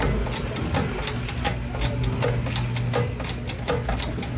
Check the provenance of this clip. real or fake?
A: real